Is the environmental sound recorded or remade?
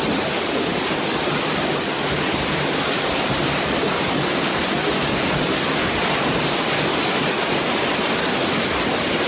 remade